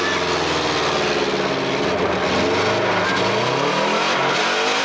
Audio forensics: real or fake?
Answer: real